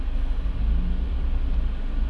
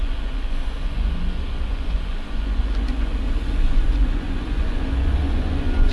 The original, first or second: first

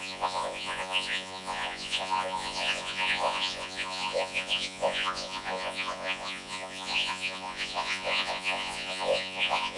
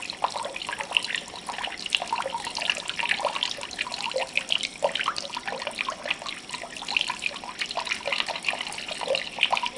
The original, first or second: second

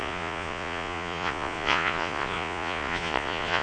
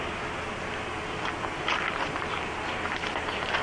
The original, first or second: second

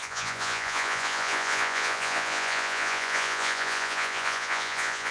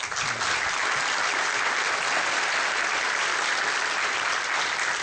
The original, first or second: second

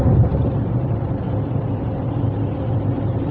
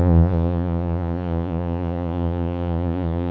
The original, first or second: first